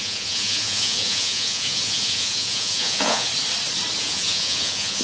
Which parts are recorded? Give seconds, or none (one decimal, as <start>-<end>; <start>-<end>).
3.3-4.0